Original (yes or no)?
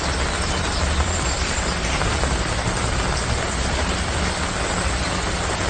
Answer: yes